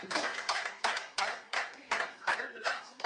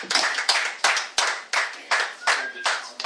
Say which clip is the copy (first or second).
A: first